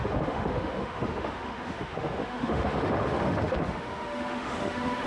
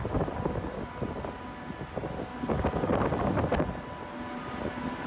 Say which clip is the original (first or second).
second